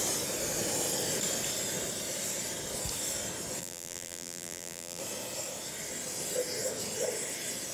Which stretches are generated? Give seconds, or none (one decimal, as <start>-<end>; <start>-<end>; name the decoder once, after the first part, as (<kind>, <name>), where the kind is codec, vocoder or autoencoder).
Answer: 3.6-5.0 (vocoder, BigVGAN v2)